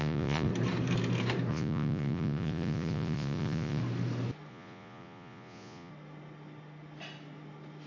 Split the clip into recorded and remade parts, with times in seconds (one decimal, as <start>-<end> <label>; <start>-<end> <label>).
0.0-0.5 remade; 0.5-1.5 recorded; 1.5-3.8 remade; 3.8-4.5 recorded; 4.5-5.9 remade; 5.9-7.9 recorded